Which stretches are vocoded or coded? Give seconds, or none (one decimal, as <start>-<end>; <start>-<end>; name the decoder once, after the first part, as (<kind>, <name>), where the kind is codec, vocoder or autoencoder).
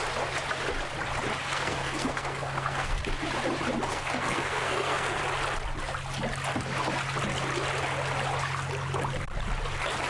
1.4-3.0 (codec, SNAC); 3.9-5.2